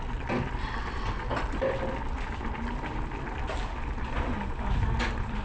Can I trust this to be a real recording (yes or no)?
yes